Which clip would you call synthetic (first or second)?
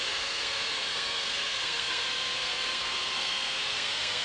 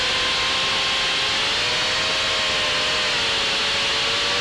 first